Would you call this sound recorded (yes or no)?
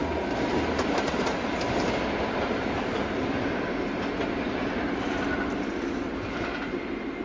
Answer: yes